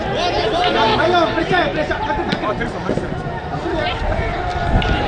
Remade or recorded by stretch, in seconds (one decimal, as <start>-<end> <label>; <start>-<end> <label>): 0.0-0.9 recorded; 0.9-1.4 remade; 1.4-5.1 recorded